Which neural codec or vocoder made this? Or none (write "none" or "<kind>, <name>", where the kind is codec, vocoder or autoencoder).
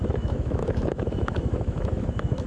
autoencoder, DAC-VAE